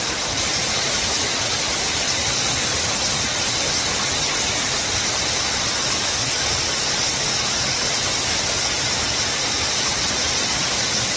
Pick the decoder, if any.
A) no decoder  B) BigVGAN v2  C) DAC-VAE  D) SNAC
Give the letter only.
A